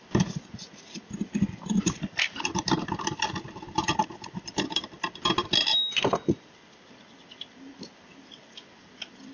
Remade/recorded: recorded